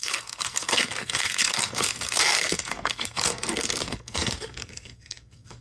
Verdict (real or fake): fake